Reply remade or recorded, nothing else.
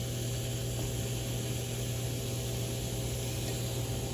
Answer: recorded